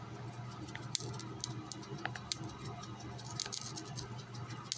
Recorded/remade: recorded